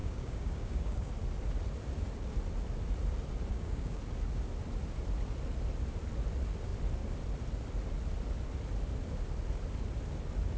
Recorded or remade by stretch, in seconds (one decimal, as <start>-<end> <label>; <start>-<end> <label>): 0.0-1.1 remade; 1.1-3.5 recorded; 3.5-4.0 remade; 4.0-10.6 recorded